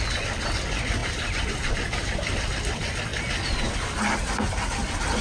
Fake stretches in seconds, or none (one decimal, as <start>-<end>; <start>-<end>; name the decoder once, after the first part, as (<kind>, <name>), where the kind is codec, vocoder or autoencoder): 0.0-3.1 (vocoder, BigVGAN v2); 4.1-5.2